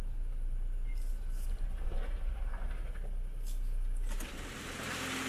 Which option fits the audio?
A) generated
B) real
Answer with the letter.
B